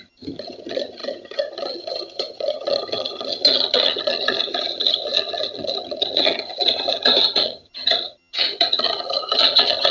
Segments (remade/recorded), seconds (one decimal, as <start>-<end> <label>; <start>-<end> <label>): 0.0-9.9 remade